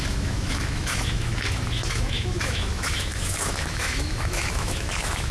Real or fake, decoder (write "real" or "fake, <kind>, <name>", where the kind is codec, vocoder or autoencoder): fake, autoencoder, DAC-VAE